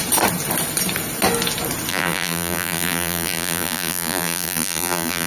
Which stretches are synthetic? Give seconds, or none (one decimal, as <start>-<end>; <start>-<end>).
1.9-5.3